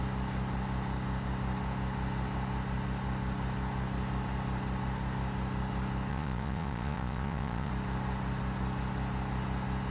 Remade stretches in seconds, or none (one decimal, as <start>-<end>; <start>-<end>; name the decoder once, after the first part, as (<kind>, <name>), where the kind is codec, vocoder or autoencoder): 6.1-7.7 (vocoder, Vocos)